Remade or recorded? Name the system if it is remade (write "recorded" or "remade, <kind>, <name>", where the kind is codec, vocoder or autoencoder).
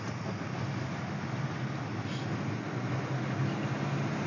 recorded